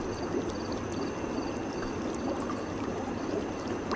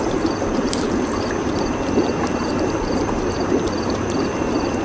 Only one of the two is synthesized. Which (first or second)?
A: second